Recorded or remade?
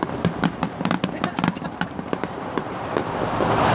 remade